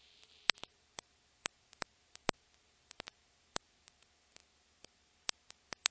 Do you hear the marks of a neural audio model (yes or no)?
yes